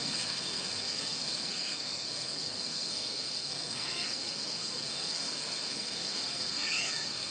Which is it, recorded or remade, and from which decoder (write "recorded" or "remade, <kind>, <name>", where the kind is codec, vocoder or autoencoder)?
remade, codec, SNAC